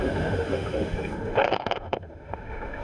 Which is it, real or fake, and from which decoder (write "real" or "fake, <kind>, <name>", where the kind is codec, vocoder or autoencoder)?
fake, autoencoder, DAC-VAE